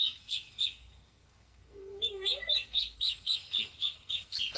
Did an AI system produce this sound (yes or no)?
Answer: yes